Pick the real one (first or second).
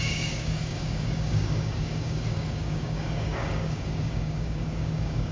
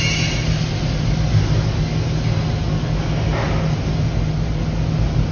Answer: second